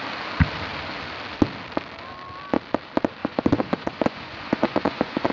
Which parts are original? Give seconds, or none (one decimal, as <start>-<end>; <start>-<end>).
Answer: 0.0-3.2